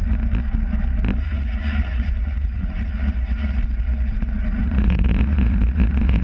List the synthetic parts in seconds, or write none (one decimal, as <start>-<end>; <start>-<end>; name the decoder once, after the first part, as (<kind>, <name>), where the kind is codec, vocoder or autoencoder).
1.2-3.6 (vocoder, Vocos); 4.6-6.2